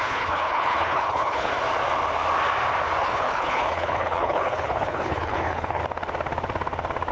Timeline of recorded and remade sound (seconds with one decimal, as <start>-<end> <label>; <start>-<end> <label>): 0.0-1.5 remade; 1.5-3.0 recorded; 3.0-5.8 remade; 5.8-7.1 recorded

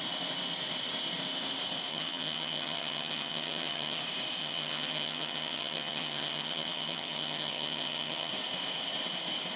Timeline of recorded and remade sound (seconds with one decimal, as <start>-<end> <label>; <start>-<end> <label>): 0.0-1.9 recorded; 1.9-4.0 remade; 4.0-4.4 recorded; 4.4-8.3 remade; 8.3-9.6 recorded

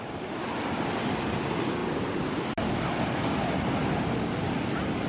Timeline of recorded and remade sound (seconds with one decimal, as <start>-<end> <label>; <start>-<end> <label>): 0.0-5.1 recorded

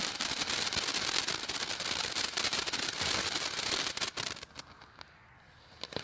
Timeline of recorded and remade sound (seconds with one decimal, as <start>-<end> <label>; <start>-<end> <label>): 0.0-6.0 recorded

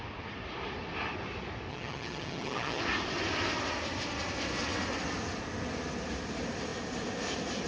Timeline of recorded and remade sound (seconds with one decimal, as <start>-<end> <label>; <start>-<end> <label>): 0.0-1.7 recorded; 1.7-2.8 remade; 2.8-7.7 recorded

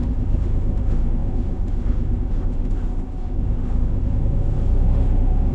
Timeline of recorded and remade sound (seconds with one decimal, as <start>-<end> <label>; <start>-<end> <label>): 0.0-5.5 remade

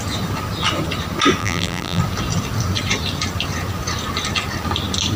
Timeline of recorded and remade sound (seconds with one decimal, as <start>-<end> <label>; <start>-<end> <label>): 0.0-1.4 recorded; 1.4-2.0 remade; 2.0-5.2 recorded